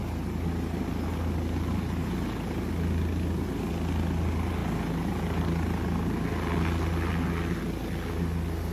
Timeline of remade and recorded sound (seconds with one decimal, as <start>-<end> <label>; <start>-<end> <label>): 0.0-8.7 recorded